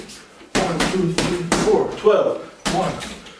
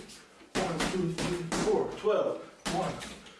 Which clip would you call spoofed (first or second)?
first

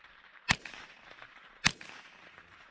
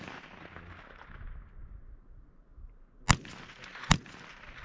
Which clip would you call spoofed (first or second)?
first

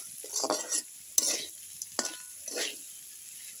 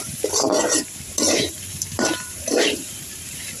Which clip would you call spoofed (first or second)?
second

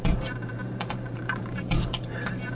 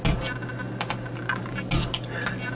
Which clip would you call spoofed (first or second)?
first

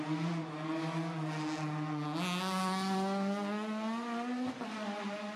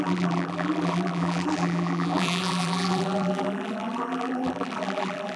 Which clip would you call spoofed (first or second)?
second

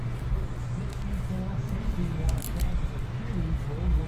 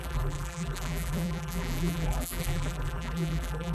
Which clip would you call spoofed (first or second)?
second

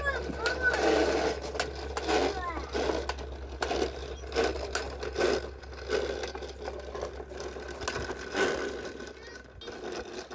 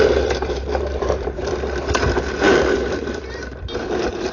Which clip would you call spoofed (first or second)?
second